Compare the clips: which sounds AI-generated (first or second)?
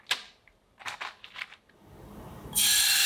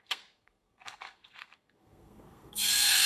second